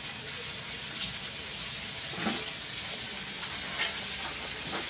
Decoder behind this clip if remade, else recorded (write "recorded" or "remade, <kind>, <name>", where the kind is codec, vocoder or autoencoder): recorded